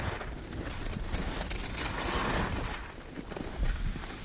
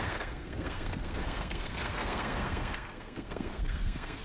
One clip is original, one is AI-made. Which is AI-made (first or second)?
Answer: second